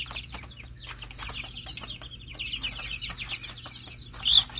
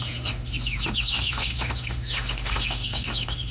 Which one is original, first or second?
first